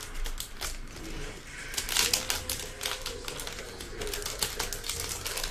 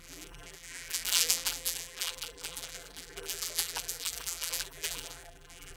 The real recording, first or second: first